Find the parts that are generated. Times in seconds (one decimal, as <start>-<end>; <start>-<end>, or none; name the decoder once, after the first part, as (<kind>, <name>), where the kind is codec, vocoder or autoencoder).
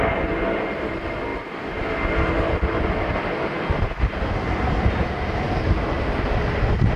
none